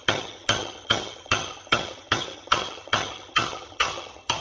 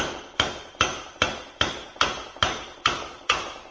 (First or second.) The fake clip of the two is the first